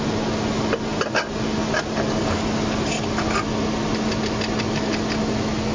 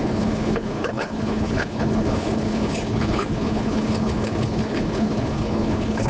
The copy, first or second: second